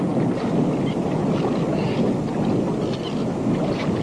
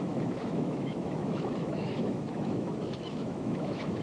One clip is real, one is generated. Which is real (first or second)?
first